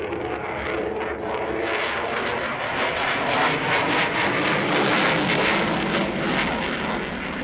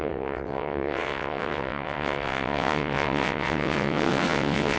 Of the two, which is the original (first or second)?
first